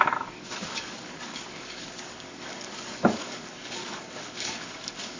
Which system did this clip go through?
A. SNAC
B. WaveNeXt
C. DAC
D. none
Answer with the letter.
C